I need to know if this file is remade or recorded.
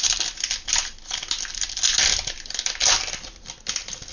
recorded